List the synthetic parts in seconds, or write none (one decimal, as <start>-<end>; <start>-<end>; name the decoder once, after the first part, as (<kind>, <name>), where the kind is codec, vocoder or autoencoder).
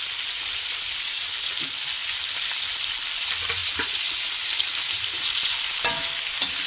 none